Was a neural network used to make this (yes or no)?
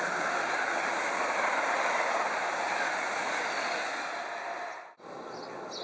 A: no